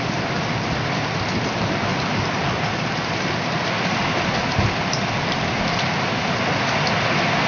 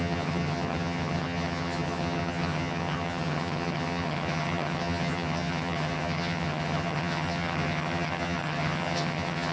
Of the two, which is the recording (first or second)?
first